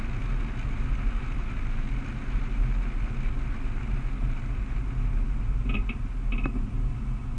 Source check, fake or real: real